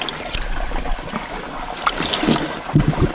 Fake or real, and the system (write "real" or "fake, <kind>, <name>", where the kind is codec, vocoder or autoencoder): real